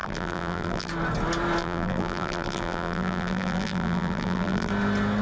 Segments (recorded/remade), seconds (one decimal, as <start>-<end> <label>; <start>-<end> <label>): 0.0-0.9 remade; 0.9-1.6 recorded; 1.6-4.7 remade; 4.7-5.2 recorded